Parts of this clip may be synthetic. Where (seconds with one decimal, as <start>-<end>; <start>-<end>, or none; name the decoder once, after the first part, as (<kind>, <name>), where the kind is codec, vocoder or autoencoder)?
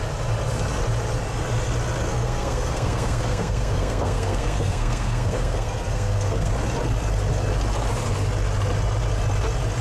2.1-6.5 (codec, SNAC)